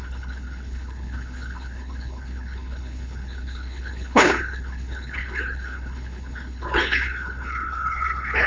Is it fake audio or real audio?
fake